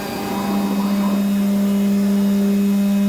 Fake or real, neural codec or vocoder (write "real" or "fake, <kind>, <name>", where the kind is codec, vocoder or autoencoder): real